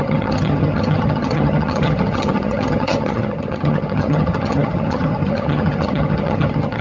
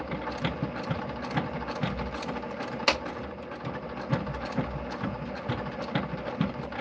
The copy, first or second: first